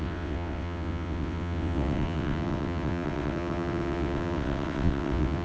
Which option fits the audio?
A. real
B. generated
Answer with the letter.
B